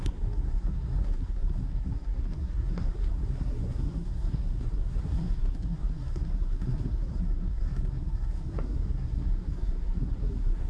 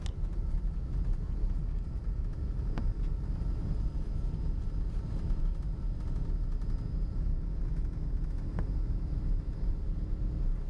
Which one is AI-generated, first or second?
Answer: first